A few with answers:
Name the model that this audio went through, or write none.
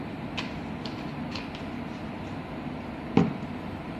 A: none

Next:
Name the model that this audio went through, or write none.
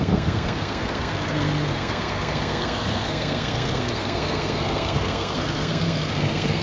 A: codec, SNAC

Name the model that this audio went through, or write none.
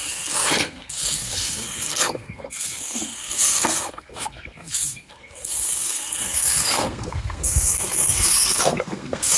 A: codec, SNAC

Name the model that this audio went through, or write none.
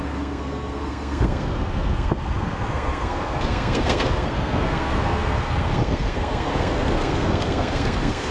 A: codec, SNAC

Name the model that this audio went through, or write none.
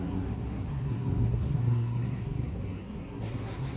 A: codec, SNAC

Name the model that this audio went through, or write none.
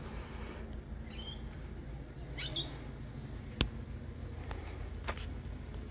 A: none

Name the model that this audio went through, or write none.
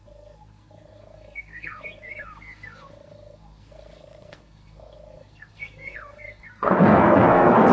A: codec, SNAC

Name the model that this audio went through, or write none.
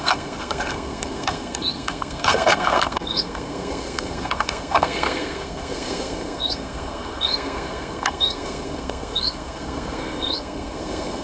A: codec, SNAC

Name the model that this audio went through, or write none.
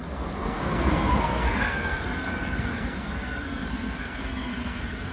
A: codec, SNAC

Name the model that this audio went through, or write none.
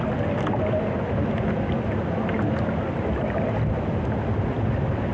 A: none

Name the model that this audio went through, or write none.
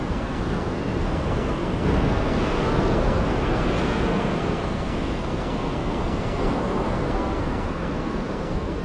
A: codec, SNAC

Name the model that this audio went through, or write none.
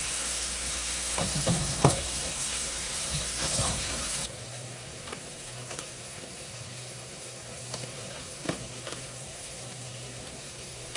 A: codec, SNAC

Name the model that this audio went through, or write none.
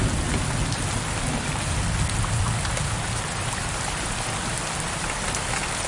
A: none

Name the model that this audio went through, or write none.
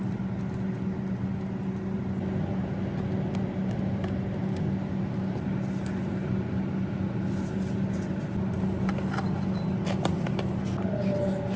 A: none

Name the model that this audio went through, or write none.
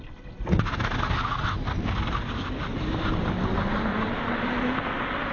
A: none